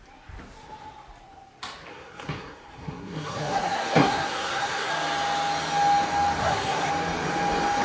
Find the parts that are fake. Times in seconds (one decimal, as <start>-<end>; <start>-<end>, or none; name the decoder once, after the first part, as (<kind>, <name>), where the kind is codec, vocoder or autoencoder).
1.9-4.9 (codec, SNAC); 6.4-6.9